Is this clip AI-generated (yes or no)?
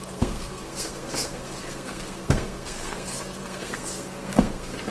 yes